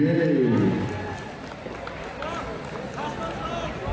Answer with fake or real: real